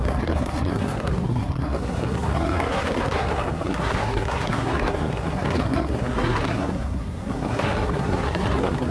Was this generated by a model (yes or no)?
yes